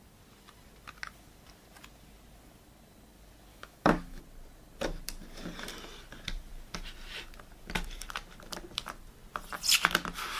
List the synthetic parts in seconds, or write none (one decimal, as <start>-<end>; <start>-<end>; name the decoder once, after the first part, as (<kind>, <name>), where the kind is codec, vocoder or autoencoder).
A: 3.5-4.2 (autoencoder, DAC-VAE)